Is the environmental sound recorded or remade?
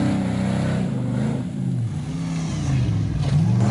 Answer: recorded